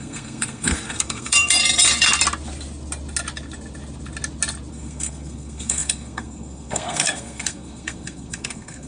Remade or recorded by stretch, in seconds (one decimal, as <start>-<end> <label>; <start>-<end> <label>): 0.0-1.6 remade; 1.6-4.7 recorded; 4.7-8.9 remade